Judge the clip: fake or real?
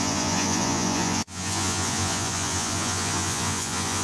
fake